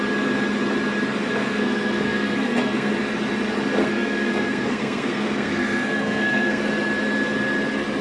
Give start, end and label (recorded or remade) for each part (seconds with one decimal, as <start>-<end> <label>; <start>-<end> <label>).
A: 0.0-1.4 recorded; 1.4-2.9 remade; 2.9-3.8 recorded; 3.8-6.7 remade; 6.7-8.0 recorded